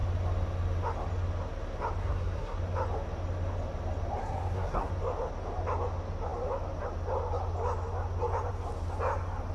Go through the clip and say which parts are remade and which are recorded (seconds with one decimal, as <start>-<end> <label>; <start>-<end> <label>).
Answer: 0.0-2.0 recorded; 2.0-2.6 remade; 2.6-4.2 recorded; 4.2-4.9 remade; 4.9-9.5 recorded